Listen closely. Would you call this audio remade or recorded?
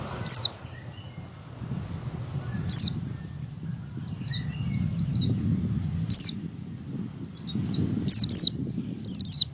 recorded